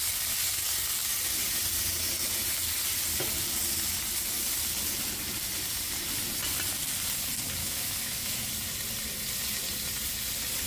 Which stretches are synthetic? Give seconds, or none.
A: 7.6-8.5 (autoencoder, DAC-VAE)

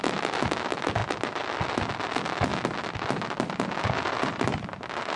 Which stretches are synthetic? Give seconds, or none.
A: none

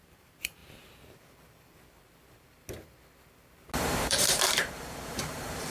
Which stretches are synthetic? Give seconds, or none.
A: 0.0-0.6 (vocoder, BigVGAN v2); 4.0-5.7

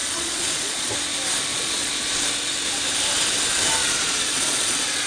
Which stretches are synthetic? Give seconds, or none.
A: 0.0-0.9 (vocoder, Vocos); 1.5-2.2; 3.8-5.1

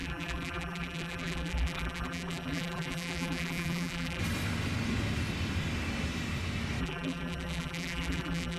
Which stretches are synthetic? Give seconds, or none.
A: 0.0-4.2 (vocoder, BigVGAN v2); 6.8-8.6

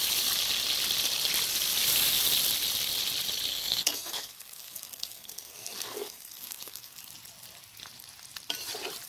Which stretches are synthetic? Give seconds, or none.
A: 3.5-7.1 (codec, SNAC)